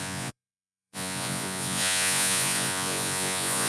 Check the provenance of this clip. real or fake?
fake